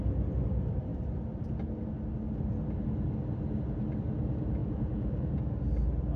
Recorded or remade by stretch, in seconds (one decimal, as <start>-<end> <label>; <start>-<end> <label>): 0.0-4.6 recorded; 4.6-5.4 remade; 5.4-6.2 recorded